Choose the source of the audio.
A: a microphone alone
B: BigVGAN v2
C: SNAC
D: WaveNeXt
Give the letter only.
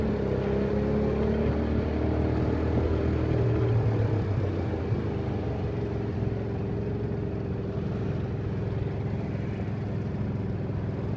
A